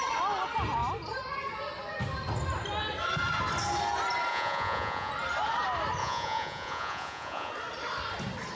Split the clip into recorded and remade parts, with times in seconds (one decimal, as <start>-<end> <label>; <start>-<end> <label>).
0.0-4.3 recorded; 4.3-5.1 remade; 5.1-6.0 recorded; 6.0-7.5 remade; 7.5-8.6 recorded